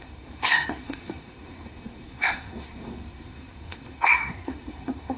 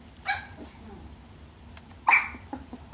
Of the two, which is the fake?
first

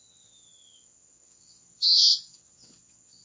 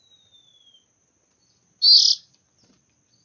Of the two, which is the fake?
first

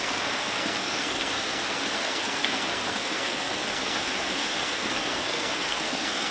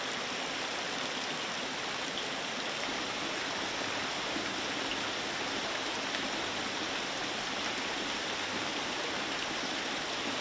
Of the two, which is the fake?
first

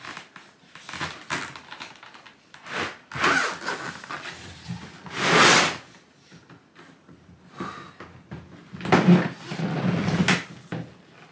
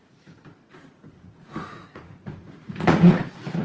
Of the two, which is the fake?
second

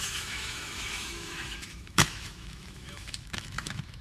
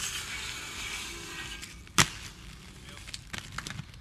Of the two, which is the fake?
first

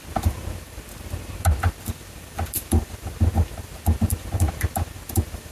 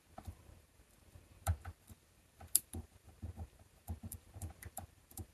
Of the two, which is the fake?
second